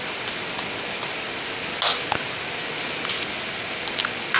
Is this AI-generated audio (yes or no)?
no